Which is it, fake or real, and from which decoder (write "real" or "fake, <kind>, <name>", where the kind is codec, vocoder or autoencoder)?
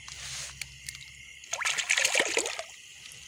real